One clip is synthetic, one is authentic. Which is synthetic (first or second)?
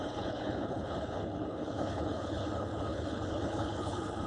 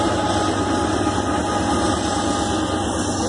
first